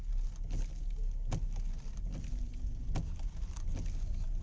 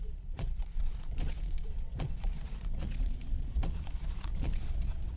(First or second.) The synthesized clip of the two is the second